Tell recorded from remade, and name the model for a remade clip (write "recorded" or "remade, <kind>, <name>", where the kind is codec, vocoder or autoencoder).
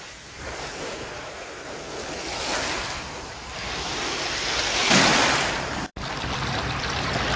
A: recorded